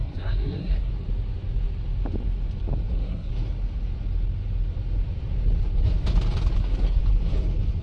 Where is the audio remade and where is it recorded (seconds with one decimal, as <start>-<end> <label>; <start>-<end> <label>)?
0.0-0.9 remade; 0.9-2.9 recorded; 2.9-3.3 remade; 3.3-6.6 recorded; 6.6-7.0 remade; 7.0-7.8 recorded

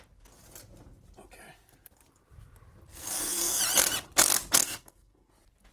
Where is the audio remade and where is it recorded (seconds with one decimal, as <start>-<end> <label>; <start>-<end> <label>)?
0.0-2.9 recorded; 2.9-3.6 remade; 3.6-4.6 recorded; 4.6-5.3 remade; 5.3-5.7 recorded